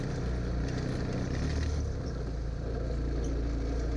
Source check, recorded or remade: recorded